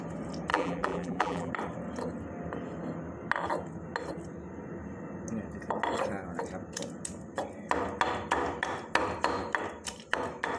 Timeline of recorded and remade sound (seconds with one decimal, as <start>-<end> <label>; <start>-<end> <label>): 0.0-0.5 recorded; 0.5-1.5 remade; 1.5-10.6 recorded